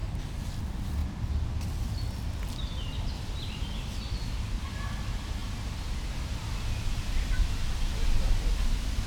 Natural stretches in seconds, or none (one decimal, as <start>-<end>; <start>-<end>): 0.0-9.1

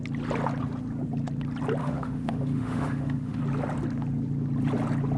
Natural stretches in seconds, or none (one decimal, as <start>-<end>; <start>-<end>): 0.0-1.8; 3.4-5.2

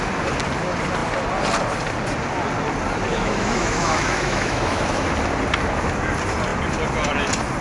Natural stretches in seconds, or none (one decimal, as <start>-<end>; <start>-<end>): 0.0-3.1; 5.1-7.6

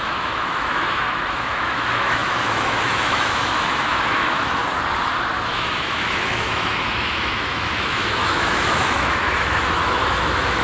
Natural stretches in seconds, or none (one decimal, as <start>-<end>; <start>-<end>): 4.6-5.5

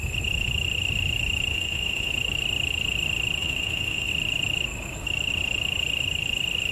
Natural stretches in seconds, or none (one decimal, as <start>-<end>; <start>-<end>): 0.0-1.5; 2.1-3.4; 4.1-6.7

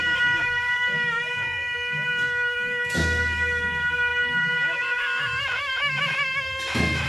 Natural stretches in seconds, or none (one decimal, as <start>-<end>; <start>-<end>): none